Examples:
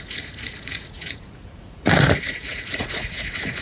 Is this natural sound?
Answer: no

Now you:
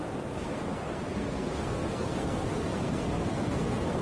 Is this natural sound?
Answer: no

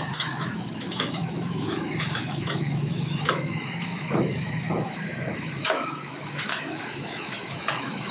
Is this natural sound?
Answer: no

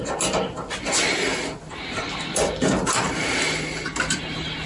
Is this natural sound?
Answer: yes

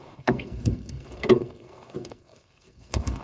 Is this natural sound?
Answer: no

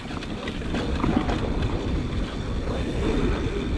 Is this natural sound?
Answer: yes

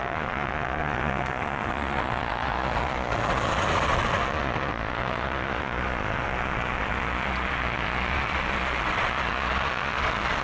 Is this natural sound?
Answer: no